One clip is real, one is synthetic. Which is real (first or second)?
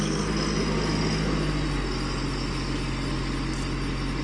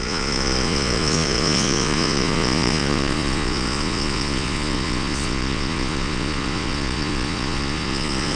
first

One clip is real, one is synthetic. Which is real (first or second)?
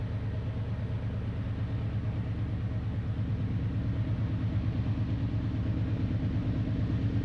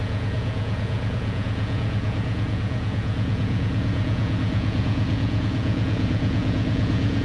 first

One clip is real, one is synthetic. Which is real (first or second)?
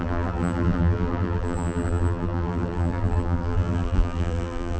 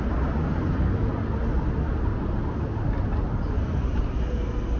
second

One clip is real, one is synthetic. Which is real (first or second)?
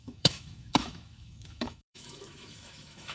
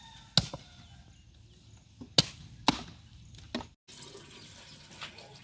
second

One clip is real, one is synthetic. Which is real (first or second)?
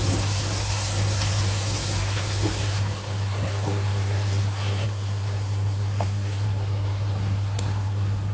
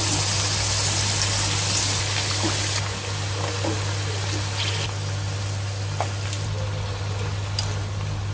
second